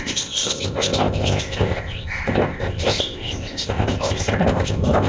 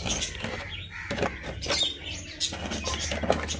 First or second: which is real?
second